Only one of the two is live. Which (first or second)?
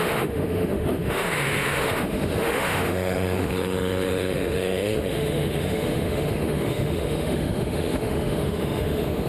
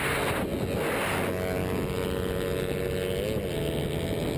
second